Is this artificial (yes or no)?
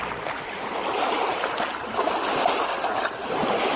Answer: no